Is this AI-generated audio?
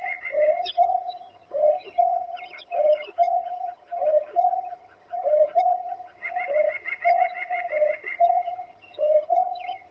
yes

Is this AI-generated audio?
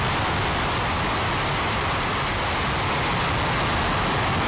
no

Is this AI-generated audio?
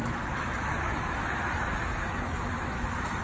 yes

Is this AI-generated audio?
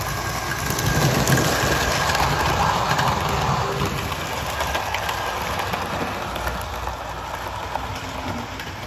no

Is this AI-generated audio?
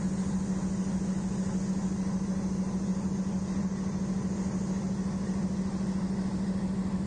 no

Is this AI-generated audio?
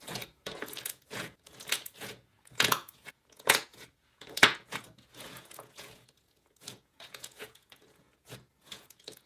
yes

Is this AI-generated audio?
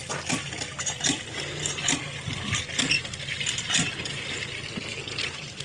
no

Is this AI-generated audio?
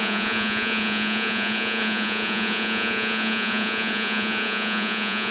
yes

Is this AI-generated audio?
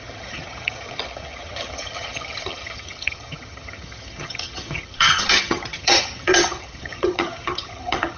yes